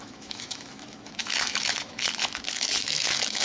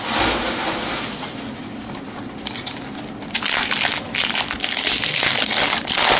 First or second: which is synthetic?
first